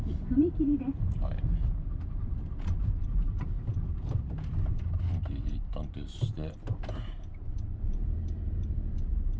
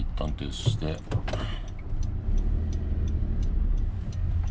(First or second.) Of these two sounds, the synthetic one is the first